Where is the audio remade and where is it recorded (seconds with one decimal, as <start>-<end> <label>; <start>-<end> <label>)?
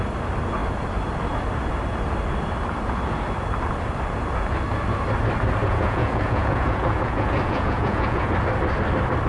0.0-5.6 recorded; 5.6-8.3 remade; 8.3-9.3 recorded